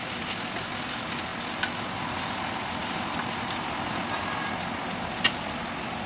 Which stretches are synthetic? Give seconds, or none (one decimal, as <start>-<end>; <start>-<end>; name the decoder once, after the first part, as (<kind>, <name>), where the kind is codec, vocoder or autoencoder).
none